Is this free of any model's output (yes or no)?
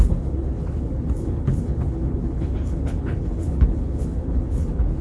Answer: no